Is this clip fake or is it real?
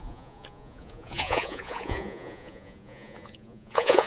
fake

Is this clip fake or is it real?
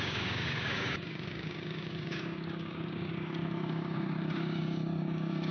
fake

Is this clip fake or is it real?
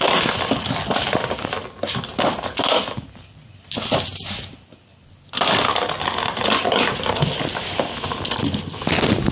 real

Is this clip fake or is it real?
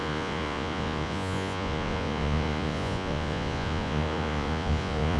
fake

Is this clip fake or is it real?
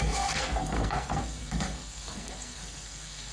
fake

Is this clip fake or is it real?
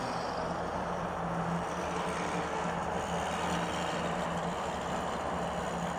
real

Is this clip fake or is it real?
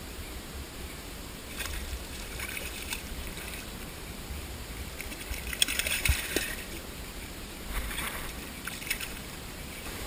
fake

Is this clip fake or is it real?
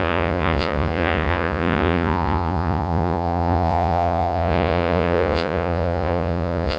fake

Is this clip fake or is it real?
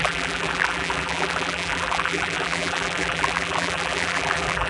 fake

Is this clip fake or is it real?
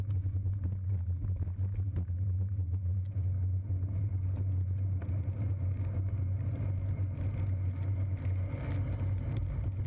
real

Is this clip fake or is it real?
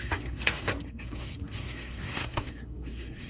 fake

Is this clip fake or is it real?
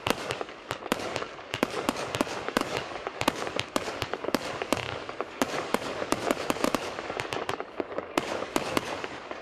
fake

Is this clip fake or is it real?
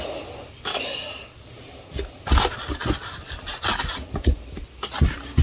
real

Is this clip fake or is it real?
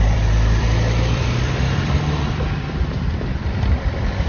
fake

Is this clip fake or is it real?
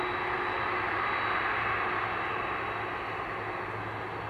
real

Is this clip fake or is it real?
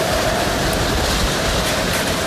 real